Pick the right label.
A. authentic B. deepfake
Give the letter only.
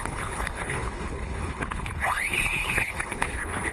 B